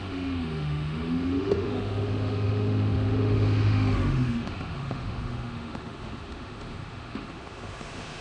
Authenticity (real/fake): fake